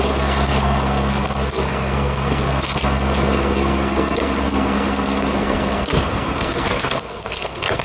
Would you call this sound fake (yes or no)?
yes